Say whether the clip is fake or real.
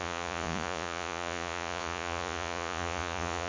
fake